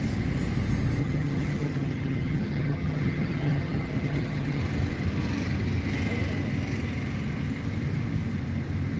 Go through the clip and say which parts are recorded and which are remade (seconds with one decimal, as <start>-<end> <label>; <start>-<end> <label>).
0.0-1.0 recorded; 1.0-4.6 remade; 4.6-9.0 recorded